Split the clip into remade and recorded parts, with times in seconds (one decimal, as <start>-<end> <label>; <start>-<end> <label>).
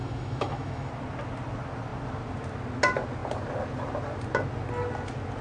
0.0-0.9 remade; 0.9-5.4 recorded